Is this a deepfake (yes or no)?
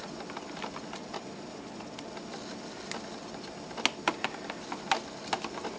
no